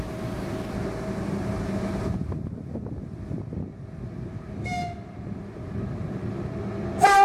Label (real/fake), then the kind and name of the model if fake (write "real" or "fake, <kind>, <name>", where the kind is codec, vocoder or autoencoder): real